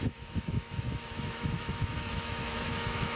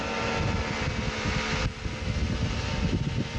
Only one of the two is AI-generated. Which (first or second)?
first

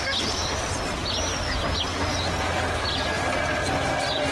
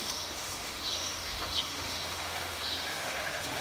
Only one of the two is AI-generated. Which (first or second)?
second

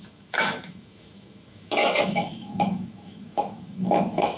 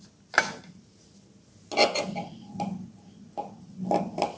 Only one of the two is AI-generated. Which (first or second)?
first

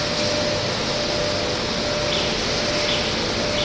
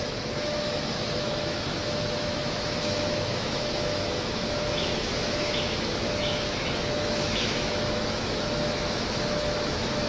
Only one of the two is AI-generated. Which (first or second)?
second